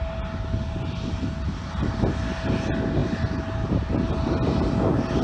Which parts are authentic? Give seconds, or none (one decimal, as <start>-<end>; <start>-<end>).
0.0-5.2

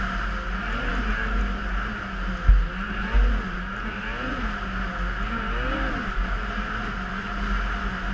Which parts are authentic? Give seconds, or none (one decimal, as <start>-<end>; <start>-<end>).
0.0-8.1